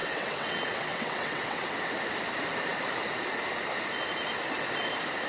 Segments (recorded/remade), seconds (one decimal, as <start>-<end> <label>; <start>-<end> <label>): 0.0-1.7 remade; 1.7-5.3 recorded